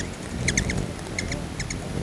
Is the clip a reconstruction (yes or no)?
no